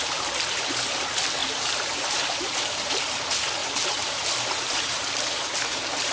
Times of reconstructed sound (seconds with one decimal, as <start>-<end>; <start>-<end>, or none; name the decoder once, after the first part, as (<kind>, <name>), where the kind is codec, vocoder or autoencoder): 1.4-3.2 (vocoder, BigVGAN v2); 3.6-6.1